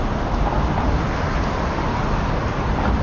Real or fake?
real